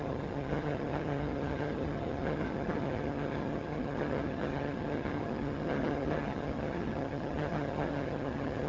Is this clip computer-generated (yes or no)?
yes